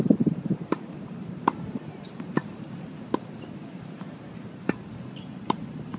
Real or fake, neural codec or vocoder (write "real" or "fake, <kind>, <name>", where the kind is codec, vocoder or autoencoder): fake, vocoder, BigVGAN v2